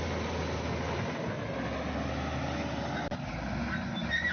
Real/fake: real